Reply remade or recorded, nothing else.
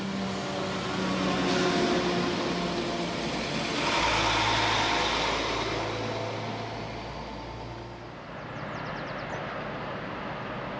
recorded